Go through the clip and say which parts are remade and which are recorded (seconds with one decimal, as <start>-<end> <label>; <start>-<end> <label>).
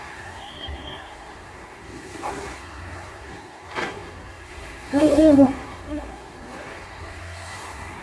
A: 0.0-8.0 remade